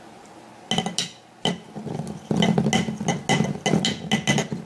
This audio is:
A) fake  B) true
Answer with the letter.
B